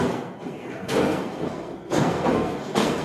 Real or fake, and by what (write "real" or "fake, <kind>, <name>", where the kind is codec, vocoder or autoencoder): fake, codec, SNAC